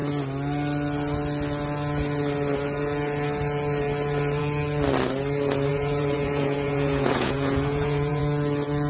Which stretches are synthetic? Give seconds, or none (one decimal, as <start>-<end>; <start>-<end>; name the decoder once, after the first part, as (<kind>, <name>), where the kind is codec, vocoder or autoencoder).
5.7-8.2 (vocoder, Vocos)